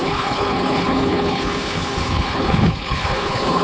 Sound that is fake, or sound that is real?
fake